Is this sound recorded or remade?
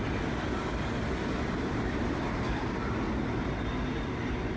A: recorded